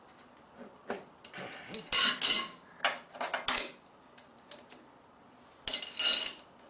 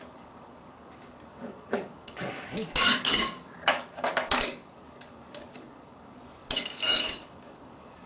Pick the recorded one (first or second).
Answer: first